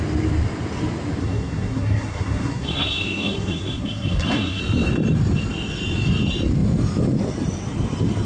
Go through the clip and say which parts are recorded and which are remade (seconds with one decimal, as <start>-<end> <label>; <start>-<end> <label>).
0.0-1.2 recorded; 1.2-4.6 remade; 4.6-8.3 recorded